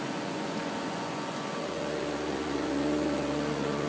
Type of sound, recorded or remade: remade